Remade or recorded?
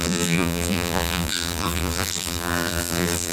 remade